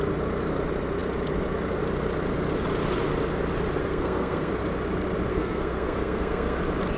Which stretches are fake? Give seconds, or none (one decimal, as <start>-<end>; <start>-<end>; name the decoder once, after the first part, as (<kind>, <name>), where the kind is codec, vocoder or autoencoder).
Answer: 3.8-4.5 (codec, SNAC); 5.3-6.6